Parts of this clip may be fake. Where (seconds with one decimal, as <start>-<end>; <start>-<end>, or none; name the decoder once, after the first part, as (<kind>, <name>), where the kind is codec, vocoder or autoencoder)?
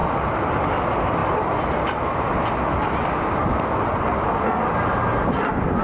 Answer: 0.0-0.5 (vocoder, BigVGAN v2); 1.2-4.7